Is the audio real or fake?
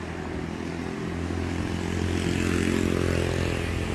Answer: real